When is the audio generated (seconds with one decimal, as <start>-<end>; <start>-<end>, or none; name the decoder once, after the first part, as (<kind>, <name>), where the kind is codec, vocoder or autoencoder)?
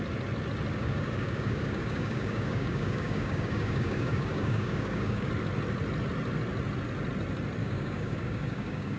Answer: 0.7-5.3 (codec, DAC); 7.6-9.0